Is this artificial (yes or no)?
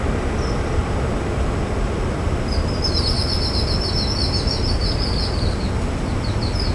no